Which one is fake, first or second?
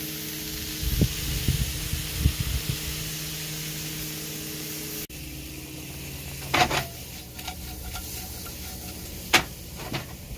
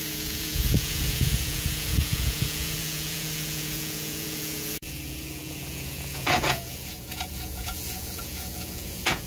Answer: second